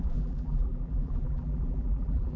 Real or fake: fake